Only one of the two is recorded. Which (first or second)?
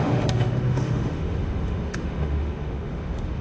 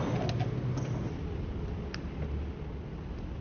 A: second